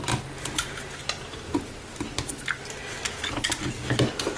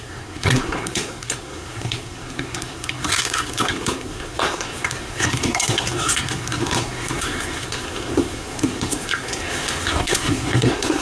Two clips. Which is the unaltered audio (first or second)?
first